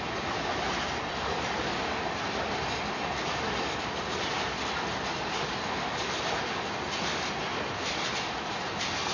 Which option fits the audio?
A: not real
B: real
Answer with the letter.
B